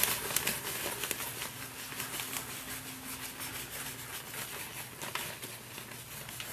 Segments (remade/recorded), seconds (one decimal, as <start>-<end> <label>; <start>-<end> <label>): 0.0-6.5 recorded